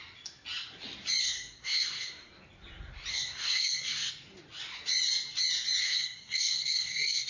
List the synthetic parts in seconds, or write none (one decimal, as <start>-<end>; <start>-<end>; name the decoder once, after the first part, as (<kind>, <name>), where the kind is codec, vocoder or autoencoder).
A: 1.2-2.3 (codec, SNAC); 3.1-4.1; 5.8-7.3